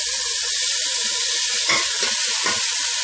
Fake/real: real